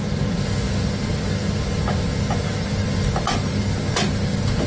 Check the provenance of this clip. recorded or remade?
recorded